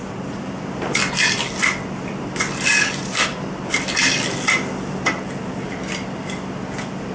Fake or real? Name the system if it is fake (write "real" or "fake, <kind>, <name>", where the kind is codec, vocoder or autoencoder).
real